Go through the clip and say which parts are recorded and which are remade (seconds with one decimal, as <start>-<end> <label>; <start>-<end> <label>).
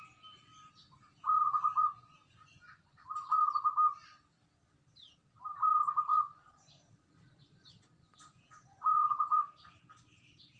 0.0-0.5 recorded; 0.5-3.4 remade; 3.4-6.1 recorded; 6.1-9.4 remade; 9.4-10.6 recorded